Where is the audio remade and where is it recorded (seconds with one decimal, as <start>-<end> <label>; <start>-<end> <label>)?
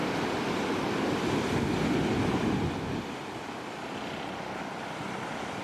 0.0-5.6 recorded